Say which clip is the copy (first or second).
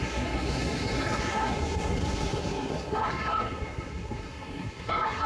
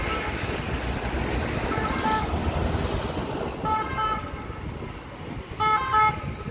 first